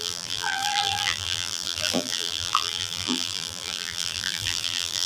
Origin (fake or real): fake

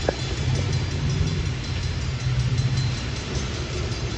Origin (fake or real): real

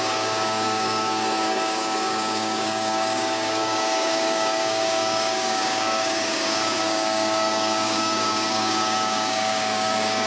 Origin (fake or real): fake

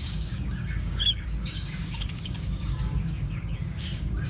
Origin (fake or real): fake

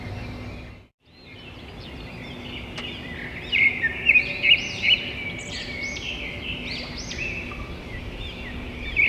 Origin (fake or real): real